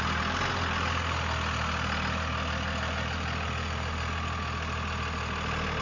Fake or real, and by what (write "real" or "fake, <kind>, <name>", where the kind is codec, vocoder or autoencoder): real